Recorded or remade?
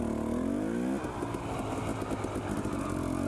recorded